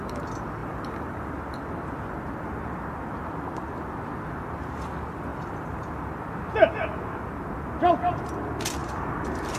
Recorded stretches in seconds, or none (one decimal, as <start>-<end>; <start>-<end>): 0.0-0.6; 1.3-5.3; 6.0-8.8